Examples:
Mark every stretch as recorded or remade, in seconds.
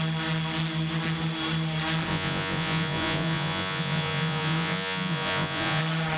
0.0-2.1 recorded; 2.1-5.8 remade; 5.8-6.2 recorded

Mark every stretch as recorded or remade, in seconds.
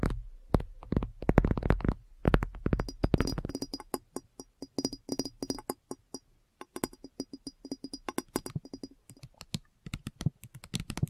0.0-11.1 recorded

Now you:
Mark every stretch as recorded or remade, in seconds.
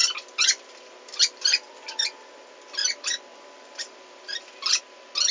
0.0-2.5 remade; 2.5-3.3 recorded; 3.3-4.8 remade; 4.8-5.3 recorded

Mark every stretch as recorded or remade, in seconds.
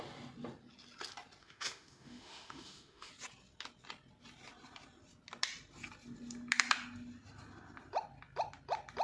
0.0-1.4 recorded; 1.4-3.1 remade; 3.1-9.0 recorded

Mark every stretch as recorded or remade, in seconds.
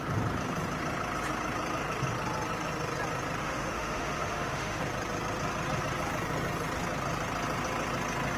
0.0-3.4 recorded; 3.4-4.8 remade; 4.8-8.4 recorded